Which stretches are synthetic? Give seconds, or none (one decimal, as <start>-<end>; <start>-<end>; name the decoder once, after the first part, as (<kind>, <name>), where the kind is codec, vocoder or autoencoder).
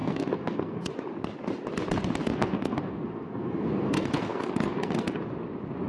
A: 0.0-0.9 (codec, SNAC); 2.2-5.2